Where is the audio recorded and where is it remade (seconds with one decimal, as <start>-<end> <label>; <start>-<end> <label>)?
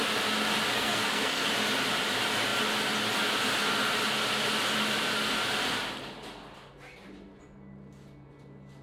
0.0-0.7 recorded; 0.7-1.5 remade; 1.5-8.8 recorded